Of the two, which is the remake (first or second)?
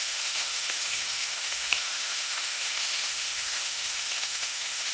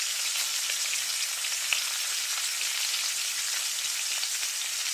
first